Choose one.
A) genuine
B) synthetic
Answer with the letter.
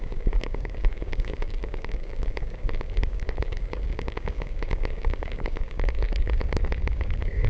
B